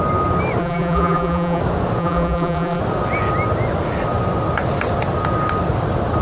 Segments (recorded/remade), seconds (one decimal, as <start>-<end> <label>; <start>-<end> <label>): 0.0-0.6 recorded; 0.6-1.6 remade; 1.6-2.0 recorded; 2.0-2.8 remade; 2.8-6.2 recorded